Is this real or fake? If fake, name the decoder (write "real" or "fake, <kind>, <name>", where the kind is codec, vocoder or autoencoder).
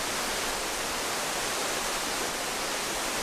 real